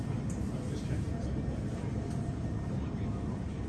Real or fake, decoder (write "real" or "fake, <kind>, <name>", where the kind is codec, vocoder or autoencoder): real